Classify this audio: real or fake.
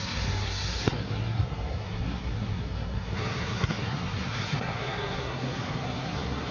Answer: fake